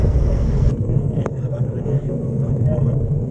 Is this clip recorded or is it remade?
remade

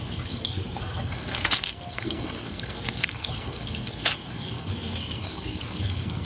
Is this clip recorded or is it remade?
remade